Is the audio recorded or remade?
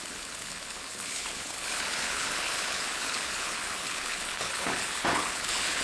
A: remade